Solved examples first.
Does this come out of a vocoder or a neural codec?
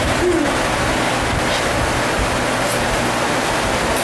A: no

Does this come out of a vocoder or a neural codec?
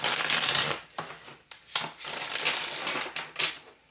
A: no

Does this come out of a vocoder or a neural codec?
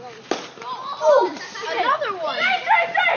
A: no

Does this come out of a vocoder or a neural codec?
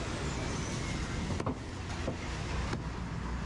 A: no